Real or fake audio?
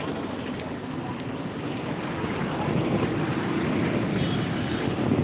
real